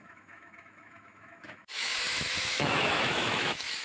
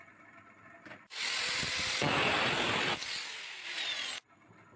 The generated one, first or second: first